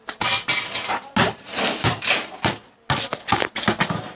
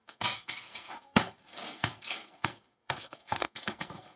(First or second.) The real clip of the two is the first